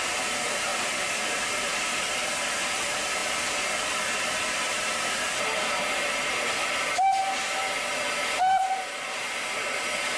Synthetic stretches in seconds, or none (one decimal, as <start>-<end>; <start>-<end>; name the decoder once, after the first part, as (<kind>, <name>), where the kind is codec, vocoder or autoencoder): none